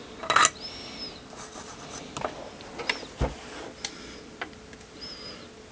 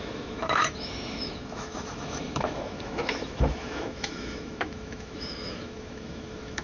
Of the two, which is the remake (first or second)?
second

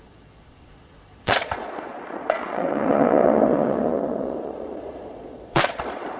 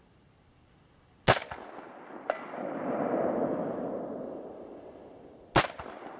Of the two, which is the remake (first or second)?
first